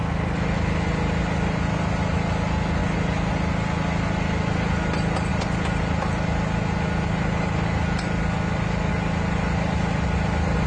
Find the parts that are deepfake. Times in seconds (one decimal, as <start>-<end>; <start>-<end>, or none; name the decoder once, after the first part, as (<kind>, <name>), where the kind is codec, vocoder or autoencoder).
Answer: none